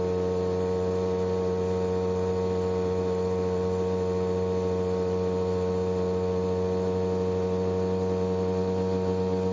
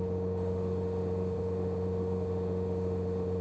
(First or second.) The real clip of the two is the first